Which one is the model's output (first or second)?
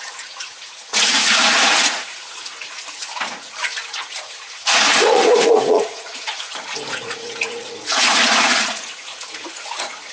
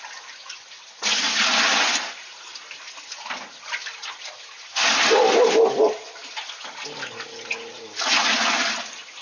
first